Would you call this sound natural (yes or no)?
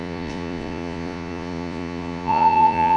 no